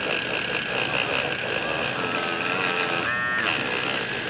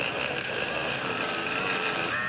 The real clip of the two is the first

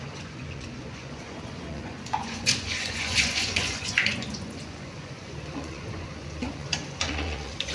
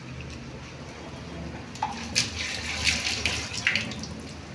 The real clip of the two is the second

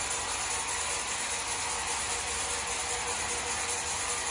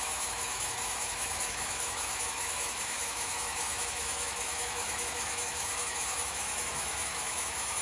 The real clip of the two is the first